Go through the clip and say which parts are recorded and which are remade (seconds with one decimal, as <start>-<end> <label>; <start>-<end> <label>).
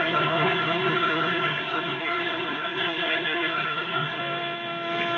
0.0-4.2 remade; 4.2-5.2 recorded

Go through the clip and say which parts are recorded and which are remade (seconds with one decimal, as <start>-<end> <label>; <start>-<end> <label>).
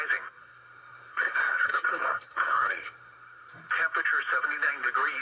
0.0-0.4 recorded; 0.4-3.5 remade; 3.5-5.2 recorded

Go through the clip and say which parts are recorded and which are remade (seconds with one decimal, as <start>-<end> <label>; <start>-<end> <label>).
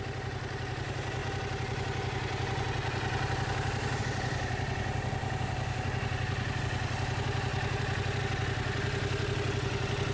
0.0-10.1 recorded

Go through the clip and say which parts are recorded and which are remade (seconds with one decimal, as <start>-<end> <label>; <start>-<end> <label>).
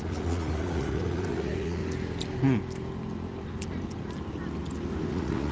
0.0-1.8 remade; 1.8-5.1 recorded; 5.1-5.5 remade